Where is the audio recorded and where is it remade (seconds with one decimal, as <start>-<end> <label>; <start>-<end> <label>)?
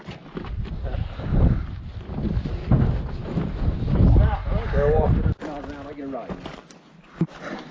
0.0-7.7 recorded